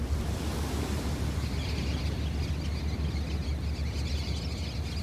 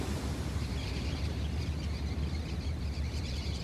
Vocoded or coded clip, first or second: second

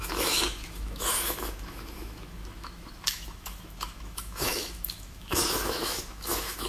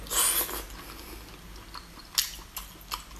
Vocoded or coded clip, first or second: first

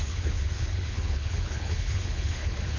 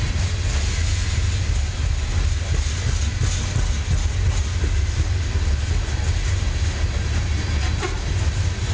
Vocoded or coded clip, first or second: first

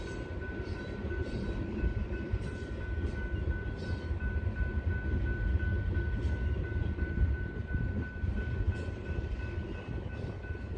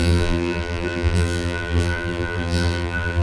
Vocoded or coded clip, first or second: second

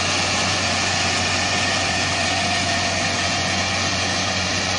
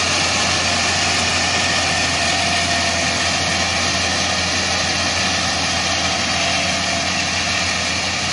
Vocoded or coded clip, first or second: first